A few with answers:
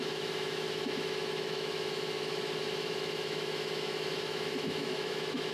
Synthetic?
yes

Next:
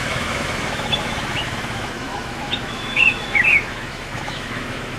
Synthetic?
yes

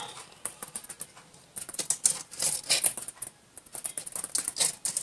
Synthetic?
no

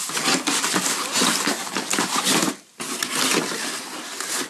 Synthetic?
no